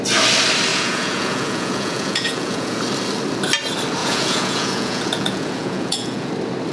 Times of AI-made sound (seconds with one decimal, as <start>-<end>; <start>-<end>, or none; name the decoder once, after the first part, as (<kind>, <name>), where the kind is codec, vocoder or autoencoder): 0.7-2.8 (vocoder, Vocos); 4.0-6.3